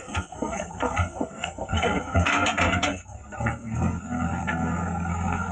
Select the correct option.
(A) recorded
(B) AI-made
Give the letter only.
B